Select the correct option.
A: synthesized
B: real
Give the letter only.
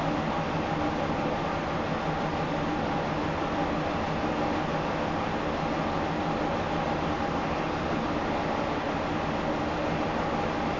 B